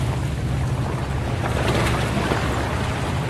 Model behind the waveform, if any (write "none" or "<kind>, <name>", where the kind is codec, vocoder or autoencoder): none